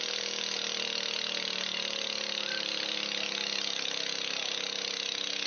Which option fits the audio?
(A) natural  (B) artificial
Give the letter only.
A